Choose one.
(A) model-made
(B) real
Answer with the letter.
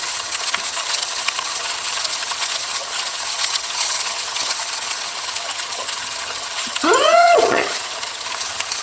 A